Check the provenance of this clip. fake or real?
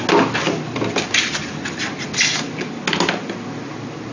real